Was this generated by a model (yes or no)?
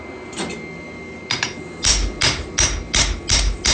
no